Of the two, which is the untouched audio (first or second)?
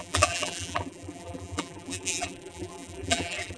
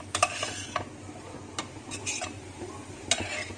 second